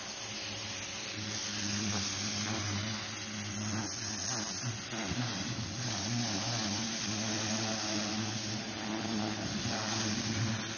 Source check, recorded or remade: recorded